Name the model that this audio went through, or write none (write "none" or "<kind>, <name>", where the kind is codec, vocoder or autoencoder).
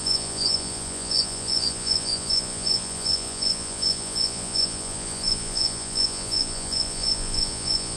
vocoder, Vocos